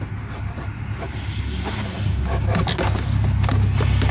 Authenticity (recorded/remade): recorded